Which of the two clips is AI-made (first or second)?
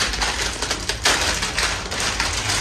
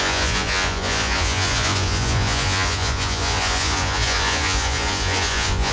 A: second